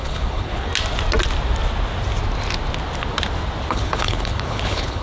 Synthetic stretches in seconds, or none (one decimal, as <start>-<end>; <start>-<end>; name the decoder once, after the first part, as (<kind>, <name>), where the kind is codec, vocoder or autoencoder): 0.0-0.7 (codec, HILCodec); 3.7-5.0